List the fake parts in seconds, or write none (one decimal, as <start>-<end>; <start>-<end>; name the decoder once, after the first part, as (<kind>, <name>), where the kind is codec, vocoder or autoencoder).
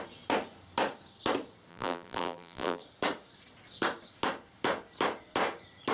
1.7-2.8 (vocoder, BigVGAN v2)